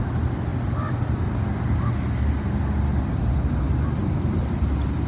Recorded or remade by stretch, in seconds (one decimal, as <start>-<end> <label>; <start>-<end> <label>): 0.0-5.1 recorded